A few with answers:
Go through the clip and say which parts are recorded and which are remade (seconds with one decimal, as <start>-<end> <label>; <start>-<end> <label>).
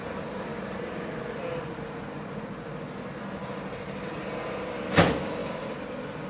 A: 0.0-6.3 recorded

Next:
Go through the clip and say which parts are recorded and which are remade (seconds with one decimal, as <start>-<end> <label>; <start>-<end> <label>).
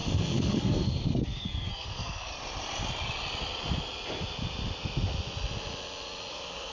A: 0.0-2.3 remade; 2.3-6.3 recorded; 6.3-6.7 remade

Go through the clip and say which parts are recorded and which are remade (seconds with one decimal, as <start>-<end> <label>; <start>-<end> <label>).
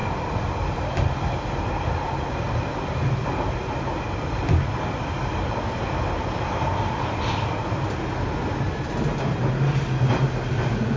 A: 0.0-11.0 recorded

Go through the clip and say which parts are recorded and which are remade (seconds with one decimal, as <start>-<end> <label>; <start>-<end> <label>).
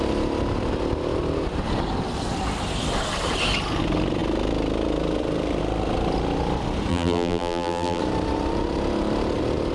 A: 0.0-6.9 recorded; 6.9-8.0 remade; 8.0-9.7 recorded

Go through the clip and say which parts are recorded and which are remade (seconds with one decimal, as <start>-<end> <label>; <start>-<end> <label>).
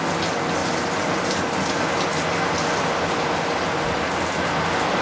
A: 0.0-5.0 recorded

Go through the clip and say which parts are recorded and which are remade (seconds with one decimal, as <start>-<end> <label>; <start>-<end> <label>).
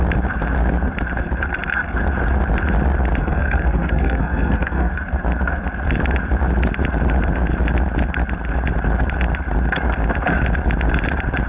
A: 0.0-3.2 recorded; 3.2-4.9 remade; 4.9-11.5 recorded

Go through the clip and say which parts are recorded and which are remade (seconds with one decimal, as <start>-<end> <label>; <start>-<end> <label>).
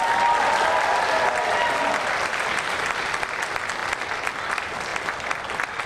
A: 0.0-5.9 recorded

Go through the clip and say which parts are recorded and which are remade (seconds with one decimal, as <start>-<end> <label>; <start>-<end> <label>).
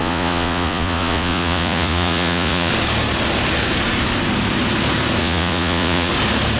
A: 0.0-2.7 remade; 2.7-5.2 recorded; 5.2-6.1 remade; 6.1-6.6 recorded